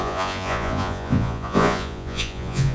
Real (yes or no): no